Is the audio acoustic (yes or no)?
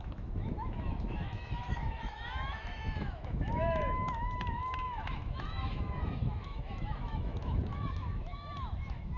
no